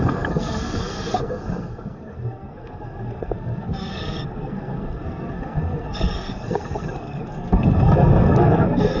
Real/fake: fake